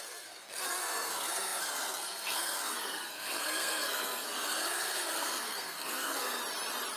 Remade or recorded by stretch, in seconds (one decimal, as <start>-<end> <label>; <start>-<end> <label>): 0.0-6.4 remade; 6.4-7.0 recorded